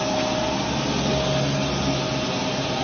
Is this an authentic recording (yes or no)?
yes